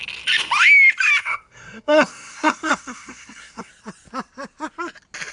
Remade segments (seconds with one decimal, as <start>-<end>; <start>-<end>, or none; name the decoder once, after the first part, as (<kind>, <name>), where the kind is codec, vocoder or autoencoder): 1.2-3.7 (codec, SNAC)